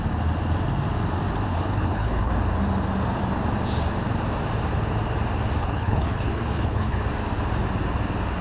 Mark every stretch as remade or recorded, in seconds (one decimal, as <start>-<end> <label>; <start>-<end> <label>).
0.0-1.5 recorded; 1.5-2.3 remade; 2.3-5.6 recorded; 5.6-7.0 remade; 7.0-8.4 recorded